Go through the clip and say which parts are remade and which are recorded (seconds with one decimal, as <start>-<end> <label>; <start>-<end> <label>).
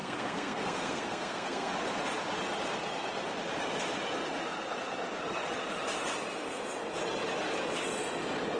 0.0-1.7 remade; 1.7-8.6 recorded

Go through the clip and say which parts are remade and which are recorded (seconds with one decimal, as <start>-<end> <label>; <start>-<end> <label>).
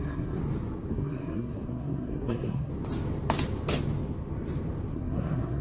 0.0-0.4 remade; 0.4-0.9 recorded; 0.9-2.7 remade; 2.7-4.9 recorded; 4.9-5.6 remade